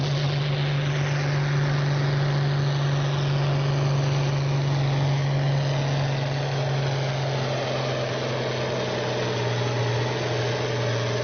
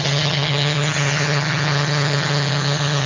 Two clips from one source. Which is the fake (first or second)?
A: second